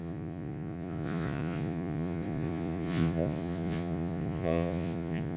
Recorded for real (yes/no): no